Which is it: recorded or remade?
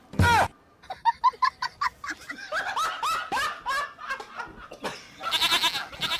recorded